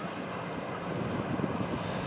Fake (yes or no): no